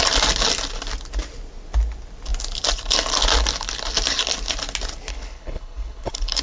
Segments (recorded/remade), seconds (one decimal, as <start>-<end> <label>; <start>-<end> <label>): 0.0-5.1 recorded; 5.1-6.4 remade